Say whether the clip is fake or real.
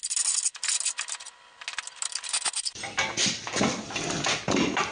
real